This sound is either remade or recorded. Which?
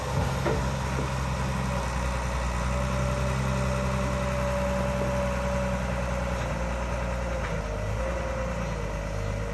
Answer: recorded